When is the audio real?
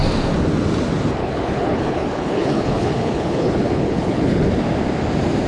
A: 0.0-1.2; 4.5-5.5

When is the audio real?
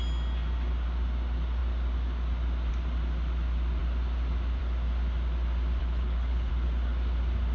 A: 0.0-5.8; 6.5-7.5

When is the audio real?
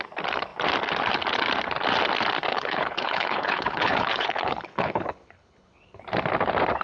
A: 0.0-2.5; 6.0-6.8